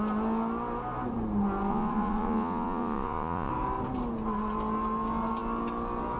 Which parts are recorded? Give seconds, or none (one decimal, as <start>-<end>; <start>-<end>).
0.0-1.7; 3.5-6.2